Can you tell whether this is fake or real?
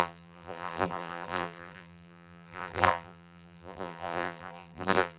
fake